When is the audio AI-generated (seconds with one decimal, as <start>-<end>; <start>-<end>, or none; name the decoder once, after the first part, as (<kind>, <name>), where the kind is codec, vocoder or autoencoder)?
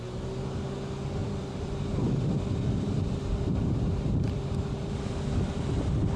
1.2-3.9 (vocoder, BigVGAN v2)